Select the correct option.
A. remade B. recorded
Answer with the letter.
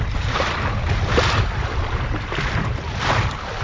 B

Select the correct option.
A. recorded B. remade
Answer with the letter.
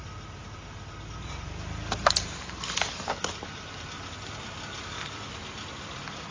A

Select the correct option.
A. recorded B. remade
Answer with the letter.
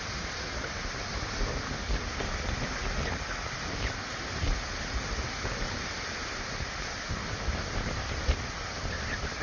A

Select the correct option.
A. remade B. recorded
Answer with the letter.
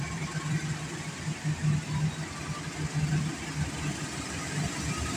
B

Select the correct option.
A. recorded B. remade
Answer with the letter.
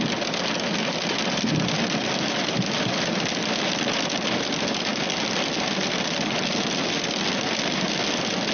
A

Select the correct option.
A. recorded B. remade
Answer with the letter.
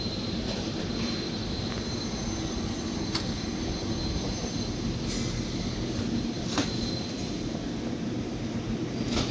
A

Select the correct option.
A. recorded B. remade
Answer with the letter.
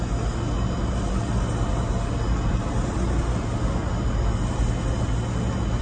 A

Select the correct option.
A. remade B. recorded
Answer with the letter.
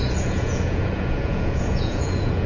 A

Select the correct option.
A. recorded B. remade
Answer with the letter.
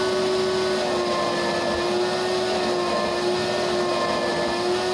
A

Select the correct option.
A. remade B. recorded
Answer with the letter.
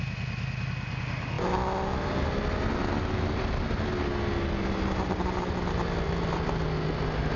B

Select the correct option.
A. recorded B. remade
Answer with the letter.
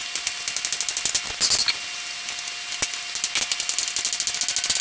A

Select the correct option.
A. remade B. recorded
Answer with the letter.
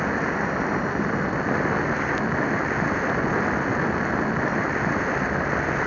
B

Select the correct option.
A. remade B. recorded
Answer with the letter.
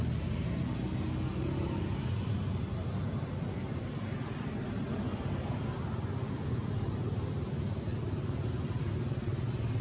B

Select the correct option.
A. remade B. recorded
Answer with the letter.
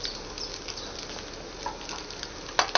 B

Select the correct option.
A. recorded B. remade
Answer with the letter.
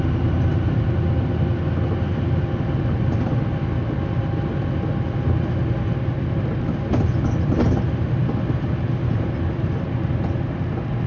A